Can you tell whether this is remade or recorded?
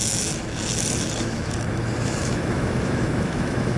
remade